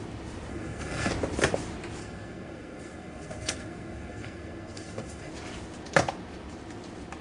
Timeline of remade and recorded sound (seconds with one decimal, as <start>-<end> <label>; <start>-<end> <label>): 0.0-0.5 recorded; 0.5-1.1 remade; 1.1-2.0 recorded; 2.0-5.3 remade; 5.3-7.2 recorded